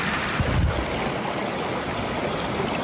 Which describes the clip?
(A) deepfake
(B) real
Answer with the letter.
B